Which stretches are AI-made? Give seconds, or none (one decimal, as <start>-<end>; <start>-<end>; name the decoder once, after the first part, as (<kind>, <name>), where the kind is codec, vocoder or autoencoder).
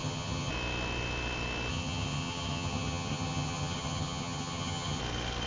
0.0-0.5 (vocoder, HiFi-GAN); 1.7-5.0